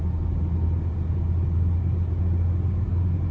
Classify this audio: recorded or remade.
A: recorded